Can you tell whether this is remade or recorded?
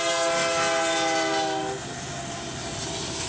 recorded